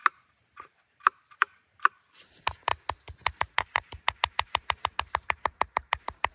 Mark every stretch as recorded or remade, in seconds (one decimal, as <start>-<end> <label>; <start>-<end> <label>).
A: 0.0-2.7 remade; 2.7-3.4 recorded; 3.4-6.3 remade